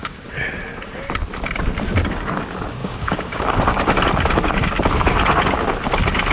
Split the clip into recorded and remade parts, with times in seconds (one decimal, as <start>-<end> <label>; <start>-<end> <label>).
0.0-0.5 remade; 0.5-2.8 recorded; 2.8-3.6 remade; 3.6-6.3 recorded